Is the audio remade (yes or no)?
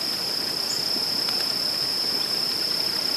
no